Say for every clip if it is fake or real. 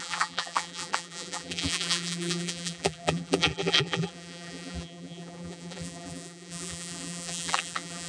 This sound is fake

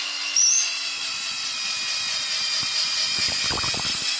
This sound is real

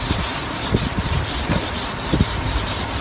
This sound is real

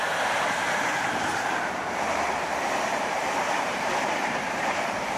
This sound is fake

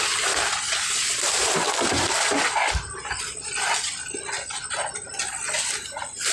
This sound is real